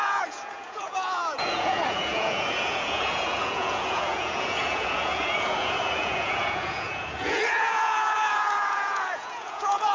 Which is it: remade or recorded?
remade